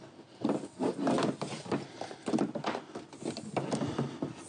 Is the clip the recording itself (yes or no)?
yes